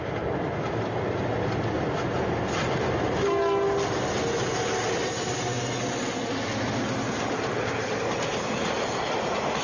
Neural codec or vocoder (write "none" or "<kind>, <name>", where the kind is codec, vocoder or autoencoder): none